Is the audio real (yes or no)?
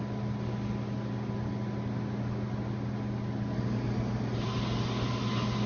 yes